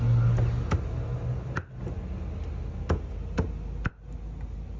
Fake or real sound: real